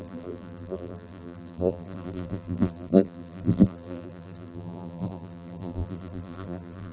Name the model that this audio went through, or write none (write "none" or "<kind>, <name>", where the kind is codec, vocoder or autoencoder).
vocoder, BigVGAN v2